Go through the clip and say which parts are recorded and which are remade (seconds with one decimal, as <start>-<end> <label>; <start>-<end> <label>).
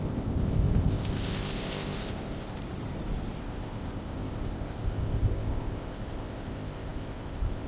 0.0-2.6 remade; 2.6-3.4 recorded; 3.4-7.7 remade